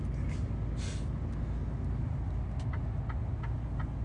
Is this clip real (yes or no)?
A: yes